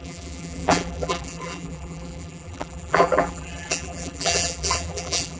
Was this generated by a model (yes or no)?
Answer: yes